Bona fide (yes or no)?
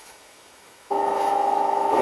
no